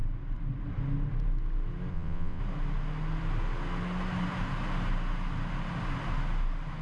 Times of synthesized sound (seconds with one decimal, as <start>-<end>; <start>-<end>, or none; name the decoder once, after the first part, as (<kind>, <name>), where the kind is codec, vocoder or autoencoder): 1.9-2.4 (vocoder, WaveNeXt)